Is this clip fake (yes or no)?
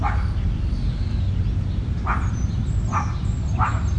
no